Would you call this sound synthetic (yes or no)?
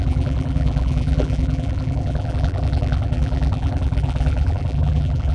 yes